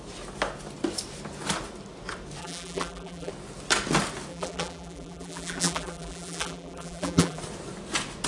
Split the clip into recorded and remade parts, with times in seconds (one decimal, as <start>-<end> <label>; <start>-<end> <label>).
0.0-2.4 recorded; 2.4-3.3 remade; 3.3-4.3 recorded; 4.3-7.4 remade; 7.4-8.3 recorded